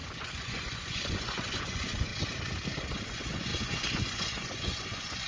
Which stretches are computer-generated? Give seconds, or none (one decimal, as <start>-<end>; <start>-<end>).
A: 0.0-2.1; 3.0-5.3